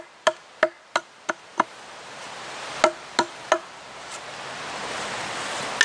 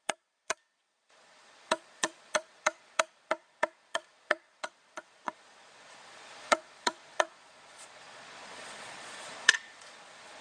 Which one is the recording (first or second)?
first